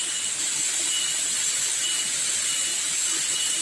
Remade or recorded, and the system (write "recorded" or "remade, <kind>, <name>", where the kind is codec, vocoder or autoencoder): recorded